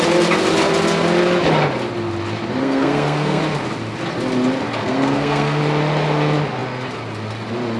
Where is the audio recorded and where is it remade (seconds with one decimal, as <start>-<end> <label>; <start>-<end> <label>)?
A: 0.0-2.6 recorded; 2.6-3.4 remade; 3.4-4.8 recorded; 4.8-5.6 remade; 5.6-7.8 recorded